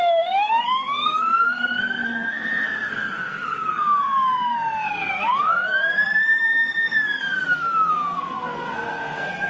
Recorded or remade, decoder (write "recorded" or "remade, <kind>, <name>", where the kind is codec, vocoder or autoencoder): remade, codec, SNAC